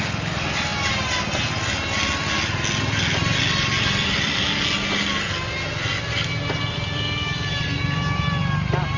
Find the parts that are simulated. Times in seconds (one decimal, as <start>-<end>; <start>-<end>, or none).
none